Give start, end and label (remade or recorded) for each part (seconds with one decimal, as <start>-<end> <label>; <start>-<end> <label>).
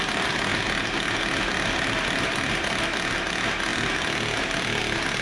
0.0-5.2 recorded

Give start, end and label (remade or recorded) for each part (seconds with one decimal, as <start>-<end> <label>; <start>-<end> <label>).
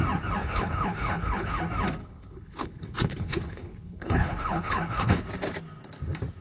0.0-0.4 recorded; 0.4-1.6 remade; 1.6-2.0 recorded; 2.0-5.2 remade; 5.2-6.4 recorded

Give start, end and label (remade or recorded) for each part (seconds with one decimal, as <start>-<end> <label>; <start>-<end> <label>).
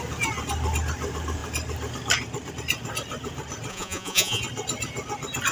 0.0-3.7 recorded; 3.7-4.4 remade; 4.4-5.5 recorded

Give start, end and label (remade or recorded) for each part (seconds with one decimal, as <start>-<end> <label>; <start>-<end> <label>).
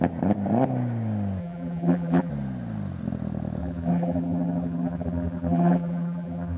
0.0-1.4 recorded; 1.4-2.3 remade; 2.3-3.6 recorded; 3.6-6.6 remade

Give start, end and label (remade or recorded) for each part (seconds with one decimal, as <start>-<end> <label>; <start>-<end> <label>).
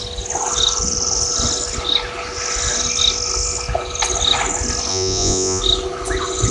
0.0-4.9 recorded; 4.9-5.6 remade; 5.6-6.5 recorded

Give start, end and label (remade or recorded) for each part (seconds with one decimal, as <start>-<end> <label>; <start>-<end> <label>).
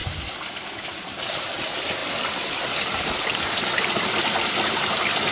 0.0-2.0 remade; 2.0-5.3 recorded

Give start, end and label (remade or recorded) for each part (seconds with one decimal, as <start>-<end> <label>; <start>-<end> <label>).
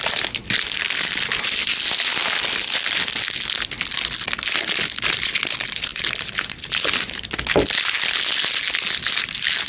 0.0-9.7 recorded